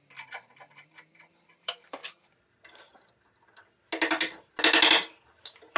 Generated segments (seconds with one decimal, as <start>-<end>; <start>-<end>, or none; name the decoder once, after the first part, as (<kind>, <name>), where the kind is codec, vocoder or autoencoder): 0.0-2.0 (vocoder, BigVGAN v2)